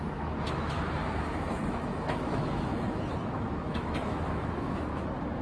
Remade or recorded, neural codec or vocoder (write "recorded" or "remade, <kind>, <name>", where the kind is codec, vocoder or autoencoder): remade, autoencoder, DAC-VAE